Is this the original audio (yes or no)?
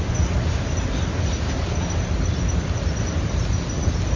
yes